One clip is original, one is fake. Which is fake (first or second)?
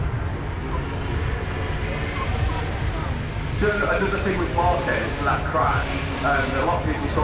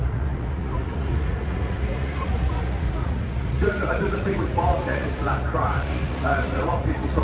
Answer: second